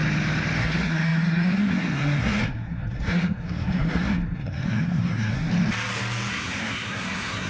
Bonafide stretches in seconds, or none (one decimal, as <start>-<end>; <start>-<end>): 0.0-0.6; 5.5-6.3